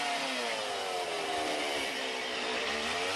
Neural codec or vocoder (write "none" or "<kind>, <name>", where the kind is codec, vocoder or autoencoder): none